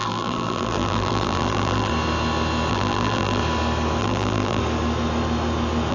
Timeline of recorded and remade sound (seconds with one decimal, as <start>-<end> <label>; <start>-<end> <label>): 0.0-1.9 remade; 1.9-2.7 recorded; 2.7-3.4 remade; 3.4-4.0 recorded; 4.0-4.6 remade; 4.6-5.9 recorded